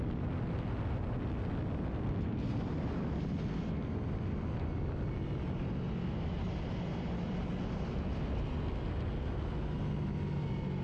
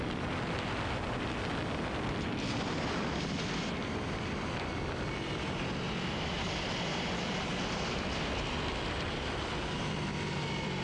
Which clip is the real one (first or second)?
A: first